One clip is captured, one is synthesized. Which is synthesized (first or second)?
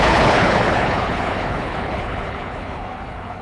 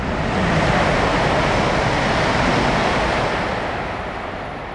first